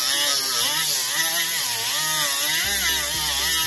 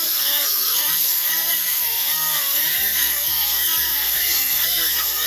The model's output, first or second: second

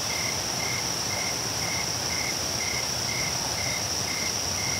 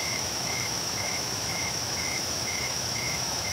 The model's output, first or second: second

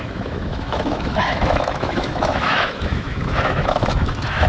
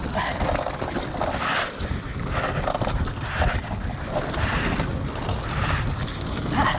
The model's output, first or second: first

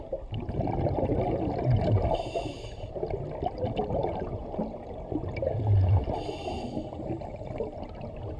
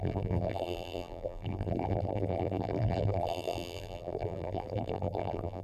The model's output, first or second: second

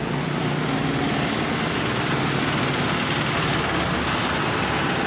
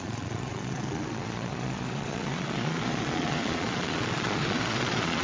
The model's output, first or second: second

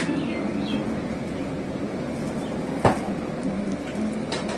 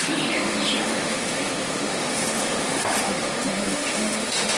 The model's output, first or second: second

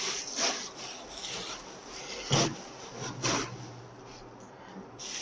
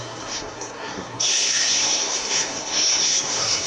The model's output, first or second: second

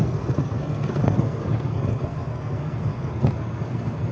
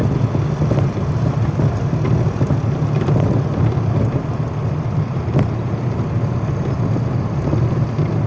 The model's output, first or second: first